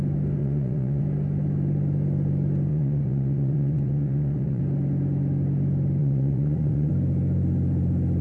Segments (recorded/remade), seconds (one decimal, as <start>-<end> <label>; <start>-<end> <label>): 0.0-0.4 recorded; 0.4-1.0 remade; 1.0-2.7 recorded; 2.7-4.6 remade; 4.6-6.0 recorded; 6.0-6.9 remade; 6.9-8.2 recorded